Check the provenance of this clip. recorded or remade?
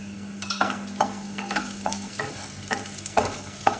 remade